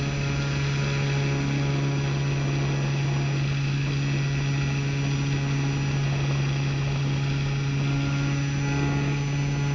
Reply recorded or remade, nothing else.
recorded